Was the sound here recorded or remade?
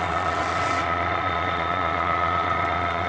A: remade